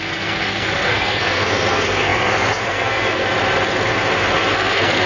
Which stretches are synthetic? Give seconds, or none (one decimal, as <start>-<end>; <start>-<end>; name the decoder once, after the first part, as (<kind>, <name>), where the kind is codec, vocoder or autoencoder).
0.0-3.2 (codec, SNAC); 4.5-5.1